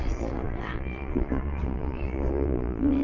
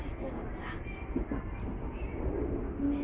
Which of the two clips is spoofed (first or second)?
first